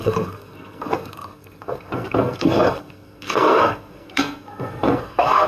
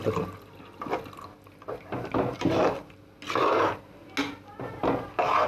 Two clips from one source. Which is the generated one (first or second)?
first